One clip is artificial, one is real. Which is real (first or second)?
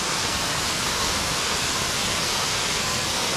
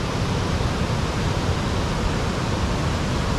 second